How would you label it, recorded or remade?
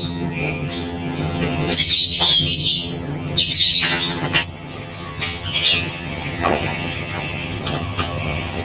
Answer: remade